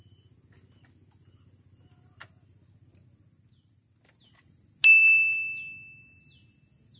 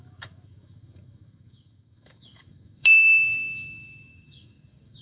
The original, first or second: first